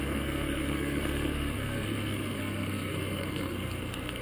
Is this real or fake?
fake